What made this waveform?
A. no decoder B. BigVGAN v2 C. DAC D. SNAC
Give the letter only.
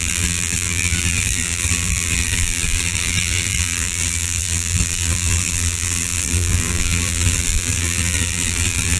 B